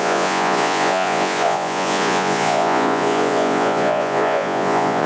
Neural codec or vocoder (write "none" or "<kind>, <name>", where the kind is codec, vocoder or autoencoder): vocoder, Vocos